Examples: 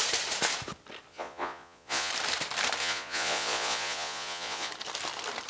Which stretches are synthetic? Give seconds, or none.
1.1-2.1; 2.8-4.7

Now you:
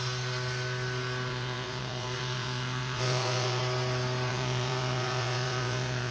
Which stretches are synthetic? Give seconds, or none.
1.3-3.6; 4.3-6.1

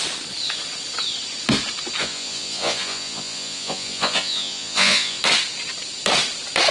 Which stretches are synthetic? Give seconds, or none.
2.0-5.2

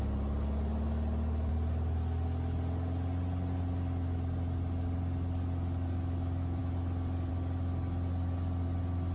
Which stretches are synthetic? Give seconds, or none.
none

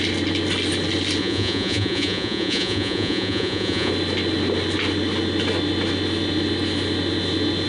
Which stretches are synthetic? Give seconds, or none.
1.2-3.9

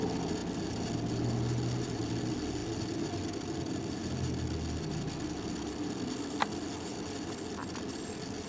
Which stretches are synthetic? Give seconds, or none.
none

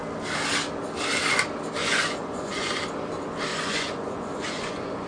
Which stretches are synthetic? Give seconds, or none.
1.8-2.7; 3.5-5.1